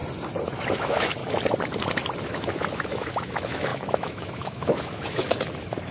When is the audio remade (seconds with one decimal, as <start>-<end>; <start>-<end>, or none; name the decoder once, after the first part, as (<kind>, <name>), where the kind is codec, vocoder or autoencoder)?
0.7-1.2 (autoencoder, DAC-VAE); 2.2-5.9